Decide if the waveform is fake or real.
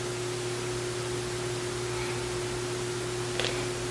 real